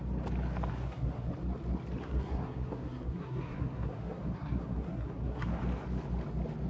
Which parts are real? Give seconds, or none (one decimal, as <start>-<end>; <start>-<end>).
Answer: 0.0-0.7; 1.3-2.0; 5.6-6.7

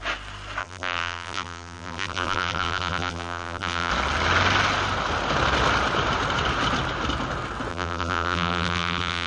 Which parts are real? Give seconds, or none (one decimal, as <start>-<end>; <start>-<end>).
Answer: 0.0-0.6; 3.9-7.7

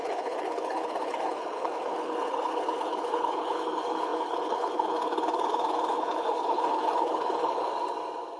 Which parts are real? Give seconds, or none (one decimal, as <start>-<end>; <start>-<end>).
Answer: 7.7-8.4

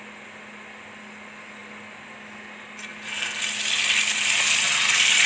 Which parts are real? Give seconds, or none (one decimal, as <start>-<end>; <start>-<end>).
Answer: 0.0-5.3